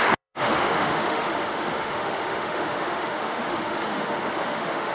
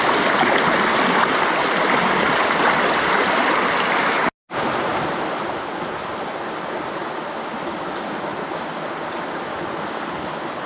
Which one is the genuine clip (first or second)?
second